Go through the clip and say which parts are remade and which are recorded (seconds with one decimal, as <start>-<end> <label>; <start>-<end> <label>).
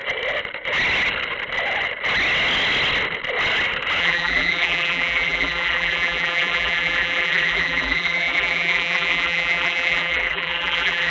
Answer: 0.0-4.0 recorded; 4.0-11.1 remade